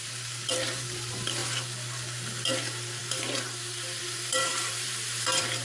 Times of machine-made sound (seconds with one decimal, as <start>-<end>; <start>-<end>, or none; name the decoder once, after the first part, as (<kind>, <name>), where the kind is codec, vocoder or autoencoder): 0.0-1.4 (vocoder, BigVGAN v2); 2.5-5.6